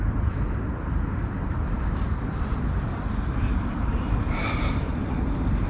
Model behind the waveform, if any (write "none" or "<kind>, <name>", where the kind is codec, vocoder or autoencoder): vocoder, BigVGAN v2